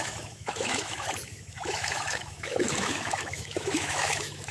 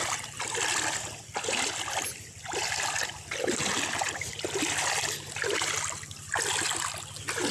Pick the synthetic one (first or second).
first